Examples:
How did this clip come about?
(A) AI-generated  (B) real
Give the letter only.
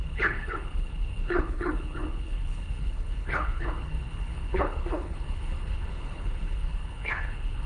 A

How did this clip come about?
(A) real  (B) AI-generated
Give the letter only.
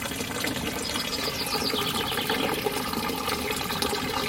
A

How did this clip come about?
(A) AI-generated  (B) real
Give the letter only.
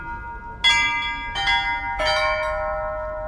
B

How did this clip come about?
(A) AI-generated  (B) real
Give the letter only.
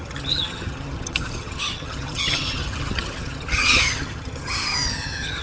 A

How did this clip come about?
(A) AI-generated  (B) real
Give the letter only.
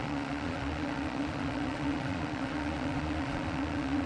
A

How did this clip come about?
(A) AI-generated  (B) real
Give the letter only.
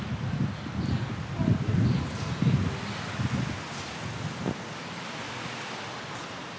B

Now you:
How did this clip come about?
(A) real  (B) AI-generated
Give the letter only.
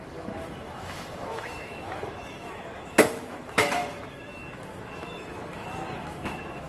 B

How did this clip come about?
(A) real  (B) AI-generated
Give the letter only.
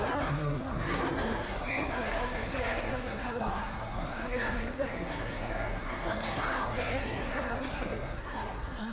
B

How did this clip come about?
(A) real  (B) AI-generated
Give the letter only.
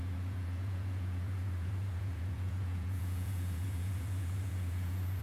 B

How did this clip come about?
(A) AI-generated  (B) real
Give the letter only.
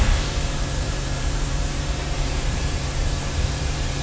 A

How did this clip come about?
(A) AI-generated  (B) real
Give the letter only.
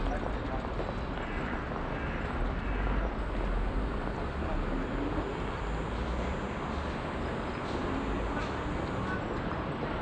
B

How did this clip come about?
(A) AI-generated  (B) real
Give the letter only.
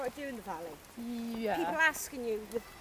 B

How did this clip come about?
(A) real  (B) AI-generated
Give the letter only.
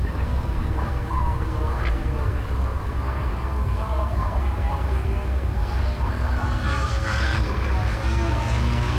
B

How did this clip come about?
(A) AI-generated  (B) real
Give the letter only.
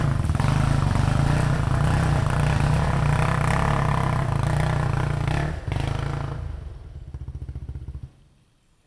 B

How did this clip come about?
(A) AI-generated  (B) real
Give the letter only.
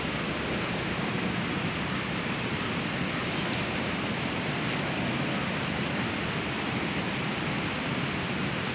B